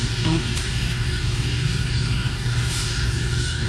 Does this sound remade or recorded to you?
remade